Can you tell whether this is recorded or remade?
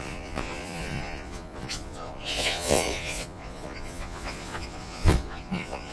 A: remade